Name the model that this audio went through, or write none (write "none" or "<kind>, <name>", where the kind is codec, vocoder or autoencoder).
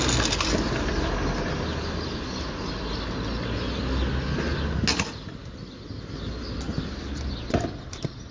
none